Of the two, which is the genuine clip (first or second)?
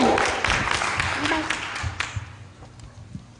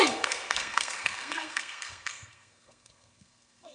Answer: first